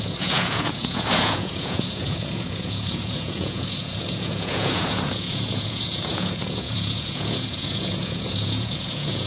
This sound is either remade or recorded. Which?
remade